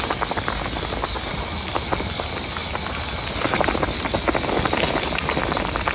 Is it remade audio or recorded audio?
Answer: recorded